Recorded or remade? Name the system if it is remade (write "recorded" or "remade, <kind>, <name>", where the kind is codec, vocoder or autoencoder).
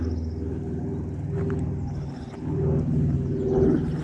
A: recorded